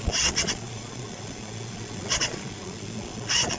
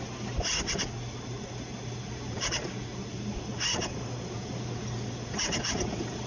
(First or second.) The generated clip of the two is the first